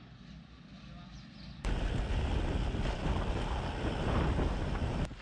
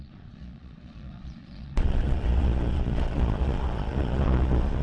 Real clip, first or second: first